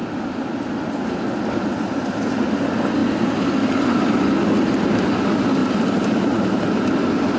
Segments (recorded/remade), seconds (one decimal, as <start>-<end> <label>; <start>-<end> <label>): 0.0-7.4 recorded